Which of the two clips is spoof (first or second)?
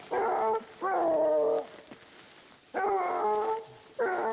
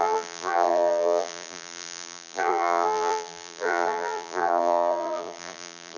second